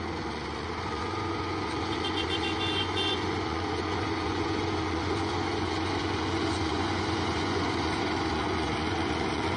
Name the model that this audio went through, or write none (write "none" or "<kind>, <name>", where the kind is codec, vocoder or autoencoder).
vocoder, Vocos